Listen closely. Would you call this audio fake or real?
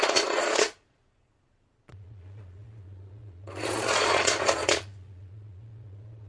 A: fake